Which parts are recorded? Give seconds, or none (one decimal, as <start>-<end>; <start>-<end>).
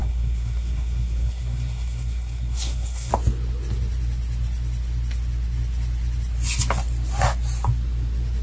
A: 3.1-8.4